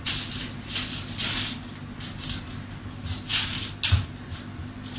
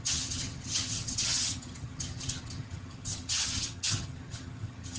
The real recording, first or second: first